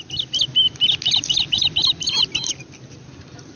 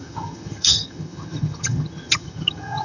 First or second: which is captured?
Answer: first